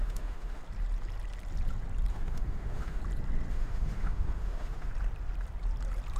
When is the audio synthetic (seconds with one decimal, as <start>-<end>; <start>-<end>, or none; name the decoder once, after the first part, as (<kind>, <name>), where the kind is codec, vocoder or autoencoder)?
0.0-0.6 (autoencoder, DAC-VAE); 2.1-3.0; 3.5-4.9